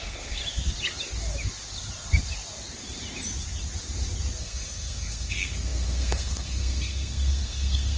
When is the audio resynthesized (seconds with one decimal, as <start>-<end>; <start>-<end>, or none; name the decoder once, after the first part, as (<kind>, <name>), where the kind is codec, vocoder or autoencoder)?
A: 0.0-0.4 (codec, SNAC); 4.4-8.0